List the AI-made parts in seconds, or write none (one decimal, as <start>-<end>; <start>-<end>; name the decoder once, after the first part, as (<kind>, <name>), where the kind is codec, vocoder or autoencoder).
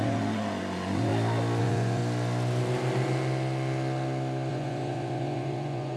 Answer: 0.0-1.1 (vocoder, Vocos); 1.6-2.0; 4.5-6.0